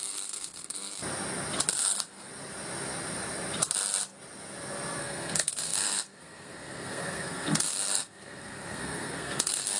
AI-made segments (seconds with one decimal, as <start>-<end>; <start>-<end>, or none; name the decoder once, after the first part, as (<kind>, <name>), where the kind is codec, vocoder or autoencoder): 0.0-1.0 (codec, SNAC); 1.7-2.3; 5.0-9.8